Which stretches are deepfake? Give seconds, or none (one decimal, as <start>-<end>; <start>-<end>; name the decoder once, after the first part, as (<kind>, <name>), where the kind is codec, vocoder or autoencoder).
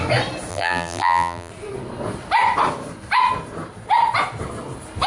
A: 0.5-1.5 (vocoder, BigVGAN v2)